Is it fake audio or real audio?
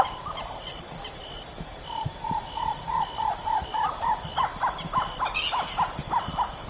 real